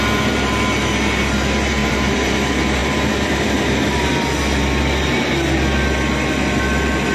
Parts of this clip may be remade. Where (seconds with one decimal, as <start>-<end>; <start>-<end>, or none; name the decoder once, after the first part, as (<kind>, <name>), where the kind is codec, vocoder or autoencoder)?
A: 1.8-2.4 (vocoder, BigVGAN v2)